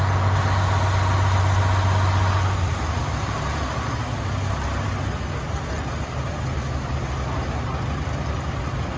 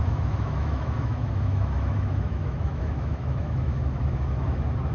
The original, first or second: first